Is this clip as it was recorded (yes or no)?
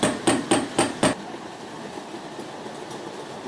yes